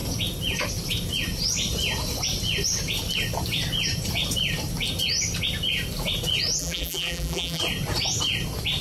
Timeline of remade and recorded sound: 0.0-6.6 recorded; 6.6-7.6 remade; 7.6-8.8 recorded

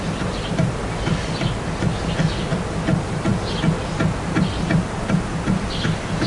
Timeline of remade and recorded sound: 0.0-6.3 recorded